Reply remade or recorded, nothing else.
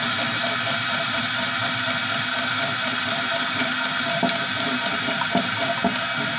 recorded